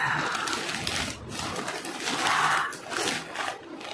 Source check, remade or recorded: recorded